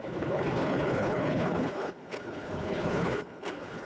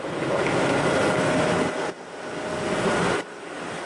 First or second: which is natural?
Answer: second